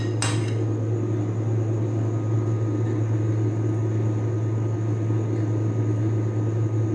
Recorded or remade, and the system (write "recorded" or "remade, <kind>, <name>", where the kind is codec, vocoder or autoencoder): recorded